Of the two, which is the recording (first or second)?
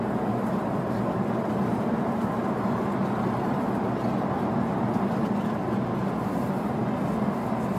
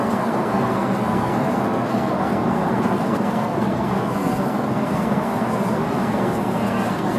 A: first